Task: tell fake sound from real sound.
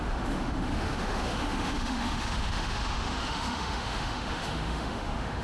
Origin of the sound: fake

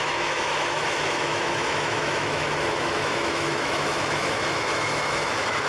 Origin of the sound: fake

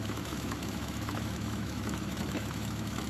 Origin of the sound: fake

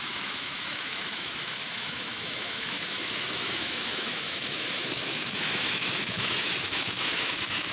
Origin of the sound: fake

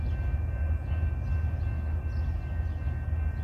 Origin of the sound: real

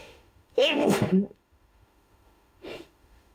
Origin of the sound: fake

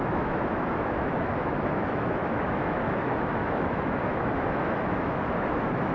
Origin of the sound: fake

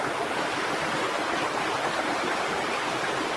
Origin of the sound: real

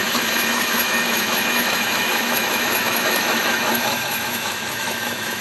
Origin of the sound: fake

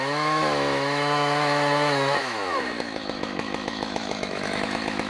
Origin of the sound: fake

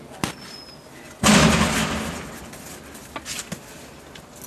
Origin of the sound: real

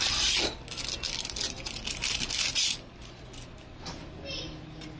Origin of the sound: real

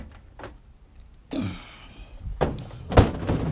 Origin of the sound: real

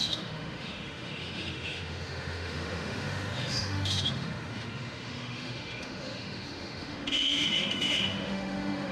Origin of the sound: fake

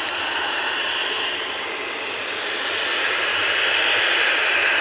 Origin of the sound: real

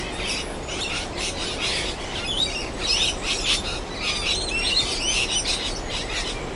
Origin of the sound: real